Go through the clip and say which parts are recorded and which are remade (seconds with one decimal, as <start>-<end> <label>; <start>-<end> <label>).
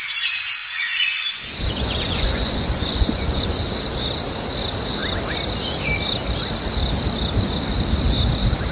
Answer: 0.0-0.6 recorded; 0.6-3.7 remade; 3.7-8.7 recorded